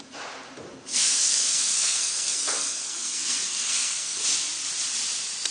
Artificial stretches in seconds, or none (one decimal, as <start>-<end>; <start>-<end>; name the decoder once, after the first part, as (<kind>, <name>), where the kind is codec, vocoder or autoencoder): 0.9-4.2 (codec, SNAC)